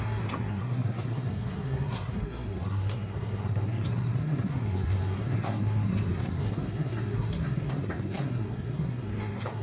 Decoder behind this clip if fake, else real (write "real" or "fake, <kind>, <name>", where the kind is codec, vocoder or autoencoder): fake, codec, SNAC